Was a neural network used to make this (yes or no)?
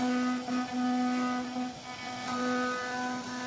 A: no